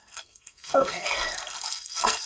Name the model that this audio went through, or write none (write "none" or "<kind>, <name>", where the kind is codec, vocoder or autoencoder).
codec, SNAC